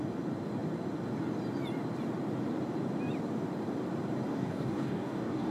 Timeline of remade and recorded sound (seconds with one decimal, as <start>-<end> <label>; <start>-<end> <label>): 0.0-4.3 recorded; 4.3-5.5 remade